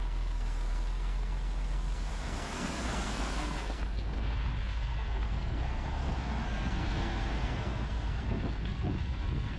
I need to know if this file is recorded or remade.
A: remade